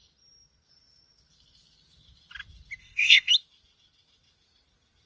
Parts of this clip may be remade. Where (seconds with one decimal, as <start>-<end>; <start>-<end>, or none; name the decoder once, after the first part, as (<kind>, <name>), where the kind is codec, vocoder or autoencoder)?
2.8-3.3 (codec, ZipCodec)